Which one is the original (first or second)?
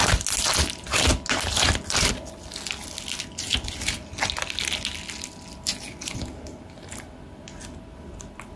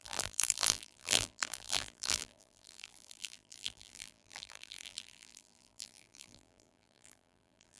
first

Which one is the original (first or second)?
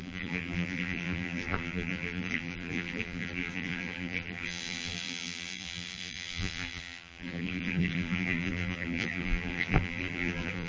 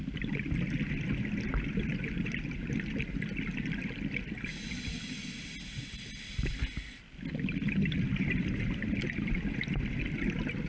second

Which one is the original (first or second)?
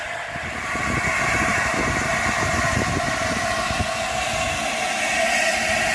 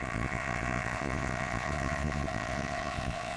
first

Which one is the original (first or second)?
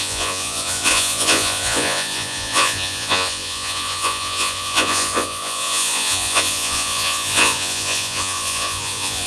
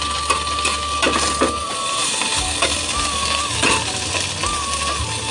second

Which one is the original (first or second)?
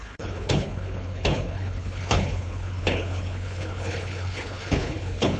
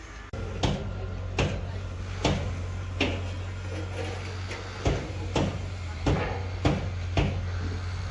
second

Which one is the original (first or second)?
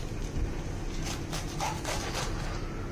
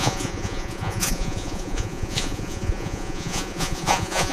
first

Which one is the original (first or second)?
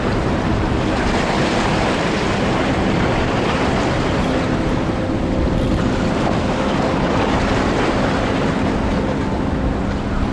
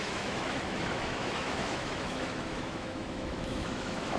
first